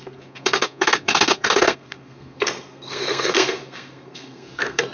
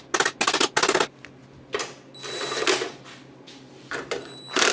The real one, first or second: second